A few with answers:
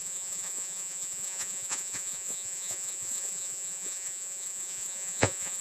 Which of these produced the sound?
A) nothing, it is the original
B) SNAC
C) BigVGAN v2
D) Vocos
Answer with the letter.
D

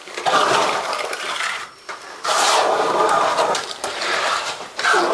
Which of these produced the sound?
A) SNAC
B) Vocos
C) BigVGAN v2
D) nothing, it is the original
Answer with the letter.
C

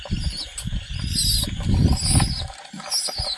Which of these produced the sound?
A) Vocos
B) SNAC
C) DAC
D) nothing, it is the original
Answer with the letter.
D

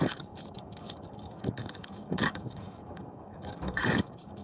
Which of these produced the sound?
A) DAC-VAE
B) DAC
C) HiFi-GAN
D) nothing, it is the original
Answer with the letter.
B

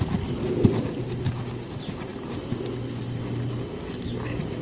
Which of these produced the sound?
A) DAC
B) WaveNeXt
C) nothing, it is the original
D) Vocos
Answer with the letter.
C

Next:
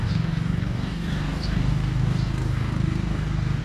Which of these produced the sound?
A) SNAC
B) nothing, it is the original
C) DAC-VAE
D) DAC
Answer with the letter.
D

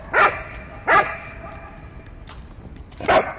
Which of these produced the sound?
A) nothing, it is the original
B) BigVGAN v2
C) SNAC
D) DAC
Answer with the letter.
A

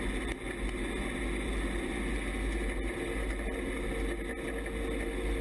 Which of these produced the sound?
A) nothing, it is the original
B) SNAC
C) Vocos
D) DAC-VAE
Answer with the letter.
A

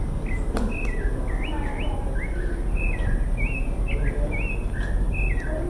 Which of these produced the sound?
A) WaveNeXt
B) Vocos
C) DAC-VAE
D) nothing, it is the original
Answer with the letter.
D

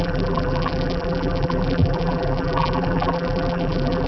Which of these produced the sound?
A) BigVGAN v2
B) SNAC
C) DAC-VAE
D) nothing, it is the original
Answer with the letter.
A